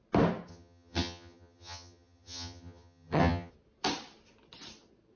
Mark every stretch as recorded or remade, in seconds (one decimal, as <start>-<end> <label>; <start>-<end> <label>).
0.0-0.5 recorded; 0.5-3.5 remade; 3.5-5.2 recorded